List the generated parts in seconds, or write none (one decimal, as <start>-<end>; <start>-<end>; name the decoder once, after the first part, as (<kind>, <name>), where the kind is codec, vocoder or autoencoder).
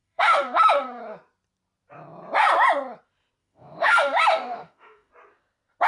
0.0-1.0 (autoencoder, DAC-VAE); 3.4-5.1